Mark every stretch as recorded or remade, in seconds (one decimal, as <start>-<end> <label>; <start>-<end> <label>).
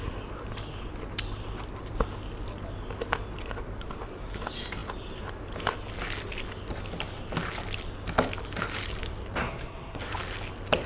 0.0-9.4 recorded; 9.4-10.0 remade; 10.0-10.9 recorded